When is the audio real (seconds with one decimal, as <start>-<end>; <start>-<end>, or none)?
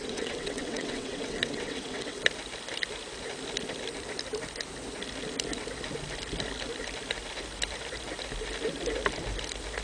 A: 2.2-9.8